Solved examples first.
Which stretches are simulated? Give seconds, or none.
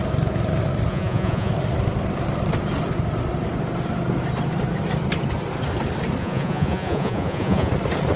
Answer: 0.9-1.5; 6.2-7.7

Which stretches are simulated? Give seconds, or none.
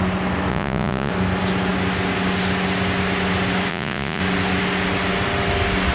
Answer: 0.5-1.1; 3.7-4.2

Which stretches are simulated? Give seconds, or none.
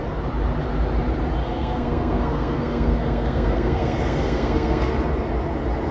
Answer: 1.4-4.9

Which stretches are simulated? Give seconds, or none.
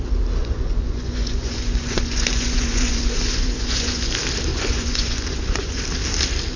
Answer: 0.4-4.1; 4.5-5.8